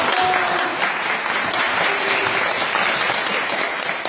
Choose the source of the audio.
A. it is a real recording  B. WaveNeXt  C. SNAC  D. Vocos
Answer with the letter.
A